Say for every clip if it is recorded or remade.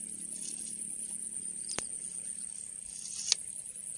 recorded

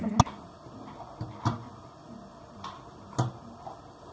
recorded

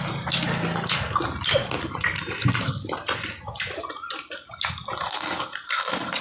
recorded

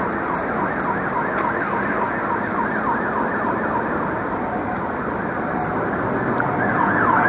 recorded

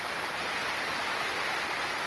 recorded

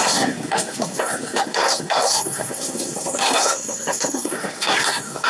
remade